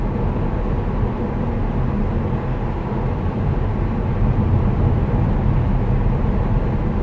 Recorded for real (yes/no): yes